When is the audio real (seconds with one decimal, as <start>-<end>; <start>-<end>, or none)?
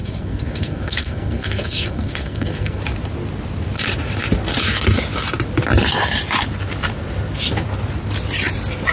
2.8-8.9